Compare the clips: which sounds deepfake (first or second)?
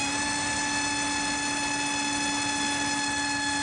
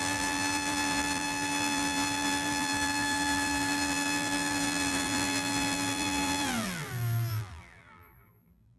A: second